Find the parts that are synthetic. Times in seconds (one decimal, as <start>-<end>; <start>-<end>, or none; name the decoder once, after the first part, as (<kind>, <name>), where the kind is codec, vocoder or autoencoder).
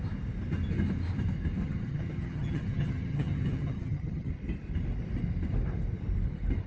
1.6-4.3 (vocoder, HiFi-GAN)